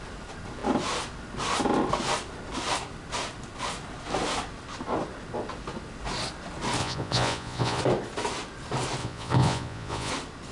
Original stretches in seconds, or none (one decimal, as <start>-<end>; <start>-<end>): 0.0-6.8; 7.8-9.0; 10.1-10.5